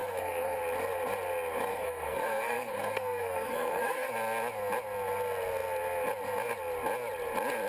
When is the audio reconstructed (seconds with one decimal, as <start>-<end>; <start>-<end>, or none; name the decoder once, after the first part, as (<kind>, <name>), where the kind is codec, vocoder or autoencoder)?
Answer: 0.0-0.6 (codec, SNAC); 1.7-4.1